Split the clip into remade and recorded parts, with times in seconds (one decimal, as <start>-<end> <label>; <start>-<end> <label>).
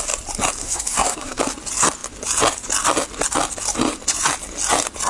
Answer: 0.0-0.6 recorded; 0.6-1.4 remade; 1.4-5.1 recorded